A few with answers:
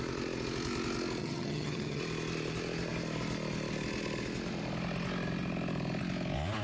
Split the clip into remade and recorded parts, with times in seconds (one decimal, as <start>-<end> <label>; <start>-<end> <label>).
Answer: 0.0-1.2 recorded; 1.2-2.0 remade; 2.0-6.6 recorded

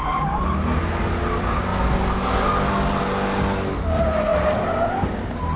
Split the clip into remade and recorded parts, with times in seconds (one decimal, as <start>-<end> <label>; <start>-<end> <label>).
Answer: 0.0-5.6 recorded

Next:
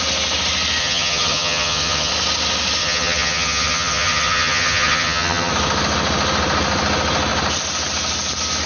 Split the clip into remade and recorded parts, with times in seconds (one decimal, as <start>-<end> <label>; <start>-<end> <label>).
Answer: 0.0-0.8 recorded; 0.8-2.1 remade; 2.1-2.8 recorded; 2.8-5.5 remade; 5.5-8.7 recorded

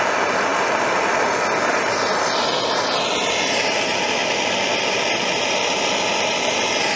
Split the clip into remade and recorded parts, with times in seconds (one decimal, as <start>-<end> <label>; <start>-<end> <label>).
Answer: 0.0-7.0 recorded

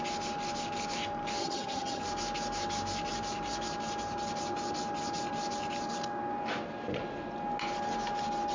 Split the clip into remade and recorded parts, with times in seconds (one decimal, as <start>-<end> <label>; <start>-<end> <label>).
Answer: 0.0-1.4 recorded; 1.4-2.0 remade; 2.0-8.5 recorded

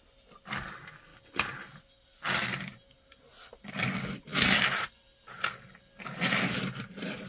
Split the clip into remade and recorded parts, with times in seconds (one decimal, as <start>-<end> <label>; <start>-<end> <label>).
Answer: 0.0-7.3 recorded